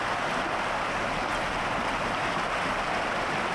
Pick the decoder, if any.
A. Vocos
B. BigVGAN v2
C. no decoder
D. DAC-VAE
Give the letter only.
C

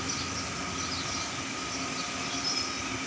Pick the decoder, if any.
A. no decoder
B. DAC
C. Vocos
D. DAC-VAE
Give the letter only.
A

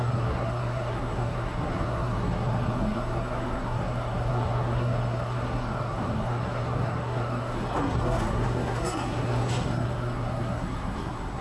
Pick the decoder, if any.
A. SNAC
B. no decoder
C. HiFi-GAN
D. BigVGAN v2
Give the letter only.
A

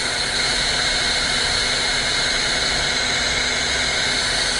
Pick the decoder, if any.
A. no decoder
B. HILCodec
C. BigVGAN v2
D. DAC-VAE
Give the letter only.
A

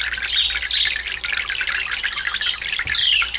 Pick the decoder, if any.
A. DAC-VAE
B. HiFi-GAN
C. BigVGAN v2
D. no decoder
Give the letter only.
D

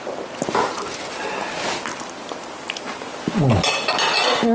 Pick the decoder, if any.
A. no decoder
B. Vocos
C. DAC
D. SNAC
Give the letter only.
A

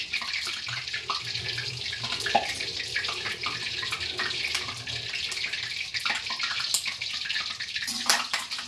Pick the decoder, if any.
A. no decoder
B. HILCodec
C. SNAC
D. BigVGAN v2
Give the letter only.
A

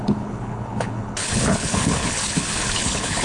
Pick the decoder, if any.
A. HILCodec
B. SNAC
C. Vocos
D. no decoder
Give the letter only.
A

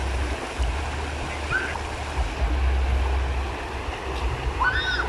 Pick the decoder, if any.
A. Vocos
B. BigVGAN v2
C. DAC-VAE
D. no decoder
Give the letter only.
D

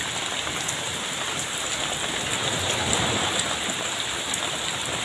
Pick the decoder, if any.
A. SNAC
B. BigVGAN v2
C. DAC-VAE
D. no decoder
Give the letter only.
D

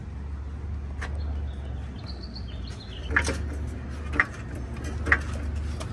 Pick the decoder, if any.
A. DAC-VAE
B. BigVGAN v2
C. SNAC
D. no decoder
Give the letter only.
D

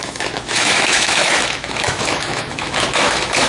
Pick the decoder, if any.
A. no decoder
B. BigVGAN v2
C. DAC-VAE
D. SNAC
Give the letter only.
C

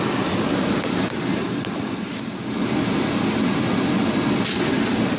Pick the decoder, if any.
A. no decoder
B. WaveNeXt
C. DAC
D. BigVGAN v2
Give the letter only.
A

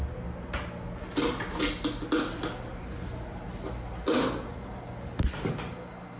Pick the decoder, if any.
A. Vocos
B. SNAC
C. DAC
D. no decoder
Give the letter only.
D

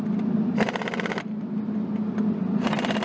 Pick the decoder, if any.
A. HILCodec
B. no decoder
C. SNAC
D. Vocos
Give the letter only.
B